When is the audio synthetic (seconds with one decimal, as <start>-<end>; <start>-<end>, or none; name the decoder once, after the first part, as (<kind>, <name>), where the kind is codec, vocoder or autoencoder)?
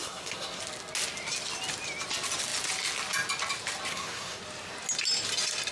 0.0-0.6 (codec, SNAC); 3.9-4.4